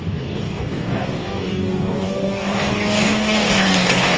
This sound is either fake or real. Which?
fake